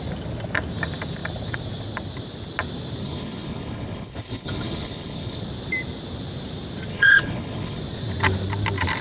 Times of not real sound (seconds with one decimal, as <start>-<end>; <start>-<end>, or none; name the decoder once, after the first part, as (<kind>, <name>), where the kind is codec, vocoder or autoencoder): 3.0-5.4 (codec, HILCodec); 6.9-7.8